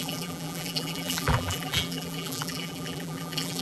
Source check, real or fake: fake